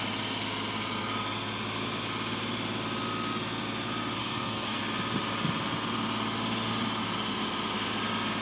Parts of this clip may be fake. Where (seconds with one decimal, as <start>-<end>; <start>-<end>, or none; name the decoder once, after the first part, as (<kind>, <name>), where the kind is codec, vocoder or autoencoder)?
4.2-4.8 (codec, SNAC)